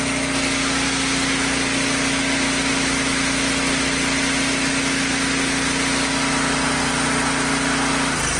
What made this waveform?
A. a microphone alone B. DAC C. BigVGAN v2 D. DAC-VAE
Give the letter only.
A